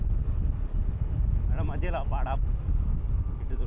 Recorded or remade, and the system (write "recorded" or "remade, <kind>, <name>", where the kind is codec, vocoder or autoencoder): recorded